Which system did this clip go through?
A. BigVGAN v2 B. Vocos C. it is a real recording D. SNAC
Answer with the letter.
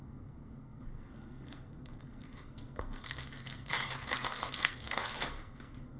D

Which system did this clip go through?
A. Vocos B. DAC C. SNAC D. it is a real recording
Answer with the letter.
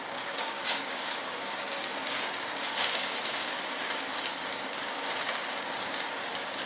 B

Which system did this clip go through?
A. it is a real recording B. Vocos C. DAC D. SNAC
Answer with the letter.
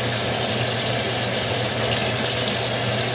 A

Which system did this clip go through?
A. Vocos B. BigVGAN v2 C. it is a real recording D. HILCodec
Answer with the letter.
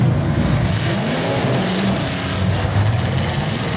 C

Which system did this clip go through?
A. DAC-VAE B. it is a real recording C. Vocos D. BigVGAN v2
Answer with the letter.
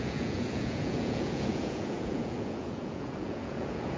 C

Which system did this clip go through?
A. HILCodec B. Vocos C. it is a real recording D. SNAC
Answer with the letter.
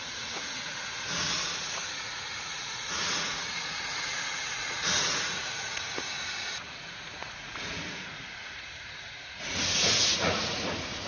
B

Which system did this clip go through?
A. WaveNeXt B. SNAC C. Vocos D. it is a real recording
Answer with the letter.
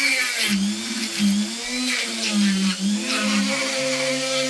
D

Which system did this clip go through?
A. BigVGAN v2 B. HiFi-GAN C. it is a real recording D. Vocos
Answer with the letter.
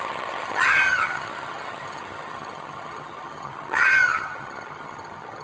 B